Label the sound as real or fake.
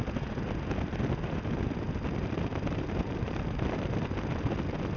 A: real